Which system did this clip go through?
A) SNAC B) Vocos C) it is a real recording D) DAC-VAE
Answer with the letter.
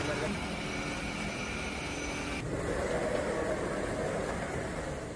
C